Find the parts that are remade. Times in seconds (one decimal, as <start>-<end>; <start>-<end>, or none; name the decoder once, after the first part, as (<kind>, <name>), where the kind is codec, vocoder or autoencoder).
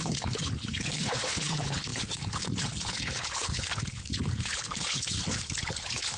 0.0-6.2 (codec, HILCodec)